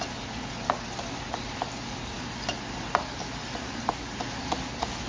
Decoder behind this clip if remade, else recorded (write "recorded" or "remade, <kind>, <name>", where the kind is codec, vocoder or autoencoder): recorded